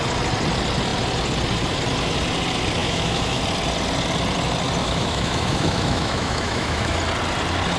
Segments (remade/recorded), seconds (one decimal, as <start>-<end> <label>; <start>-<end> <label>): 0.0-2.8 recorded; 2.8-3.4 remade; 3.4-4.8 recorded; 4.8-7.0 remade; 7.0-7.8 recorded